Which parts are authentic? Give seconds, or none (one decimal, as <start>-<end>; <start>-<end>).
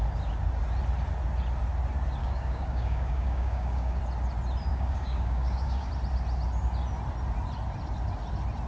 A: 0.0-2.2; 4.0-4.7; 5.9-8.7